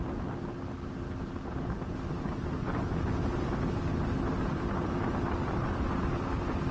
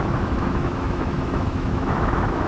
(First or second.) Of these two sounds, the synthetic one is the second